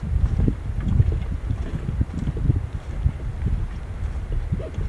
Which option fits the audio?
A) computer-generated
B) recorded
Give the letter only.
B